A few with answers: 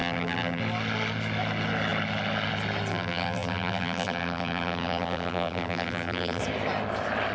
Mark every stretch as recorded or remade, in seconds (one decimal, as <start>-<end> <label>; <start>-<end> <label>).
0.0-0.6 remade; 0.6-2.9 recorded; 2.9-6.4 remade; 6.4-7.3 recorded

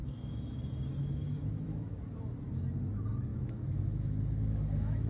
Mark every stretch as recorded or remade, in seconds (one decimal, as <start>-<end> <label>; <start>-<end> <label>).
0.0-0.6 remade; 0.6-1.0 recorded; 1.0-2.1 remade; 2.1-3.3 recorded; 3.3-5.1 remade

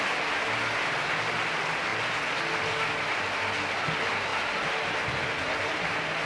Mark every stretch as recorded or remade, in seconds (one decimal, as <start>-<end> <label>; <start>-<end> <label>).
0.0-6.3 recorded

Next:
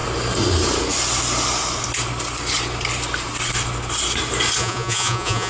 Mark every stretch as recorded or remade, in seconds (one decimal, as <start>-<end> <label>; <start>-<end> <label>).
0.0-4.6 recorded; 4.6-5.5 remade

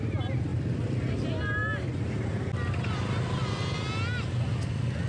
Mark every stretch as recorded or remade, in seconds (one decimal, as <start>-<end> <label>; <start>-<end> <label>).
0.0-5.1 recorded

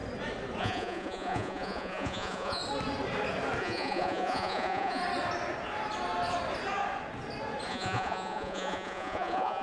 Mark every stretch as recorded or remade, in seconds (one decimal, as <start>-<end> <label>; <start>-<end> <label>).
0.0-0.6 recorded; 0.6-2.6 remade; 2.6-3.6 recorded; 3.6-5.0 remade; 5.0-7.7 recorded; 7.7-9.6 remade